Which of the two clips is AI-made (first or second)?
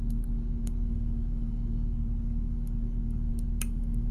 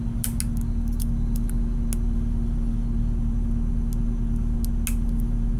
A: first